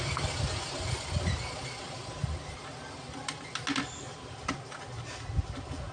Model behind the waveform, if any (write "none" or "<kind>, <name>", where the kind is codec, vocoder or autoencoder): none